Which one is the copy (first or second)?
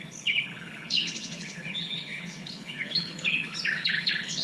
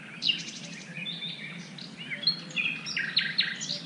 first